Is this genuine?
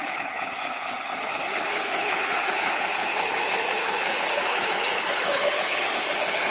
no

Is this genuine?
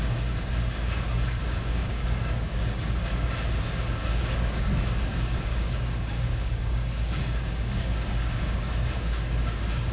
no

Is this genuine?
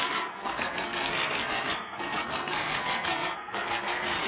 no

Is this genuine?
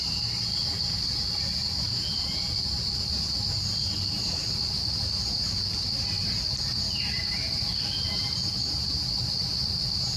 yes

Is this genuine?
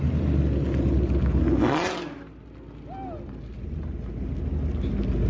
yes